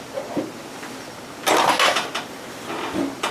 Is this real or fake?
real